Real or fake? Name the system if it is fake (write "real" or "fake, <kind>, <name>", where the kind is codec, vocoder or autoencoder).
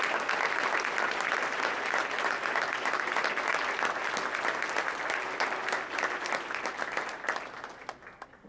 real